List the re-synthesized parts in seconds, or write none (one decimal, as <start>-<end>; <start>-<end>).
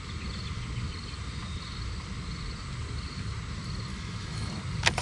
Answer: 3.9-4.5